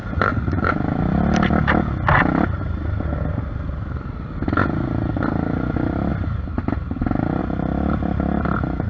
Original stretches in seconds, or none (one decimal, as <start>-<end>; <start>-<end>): 0.7-8.9